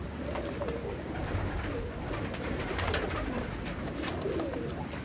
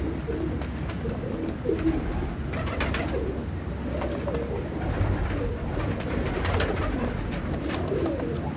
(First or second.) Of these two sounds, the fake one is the first